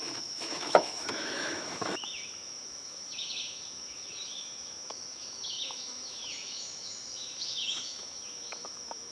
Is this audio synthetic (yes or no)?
yes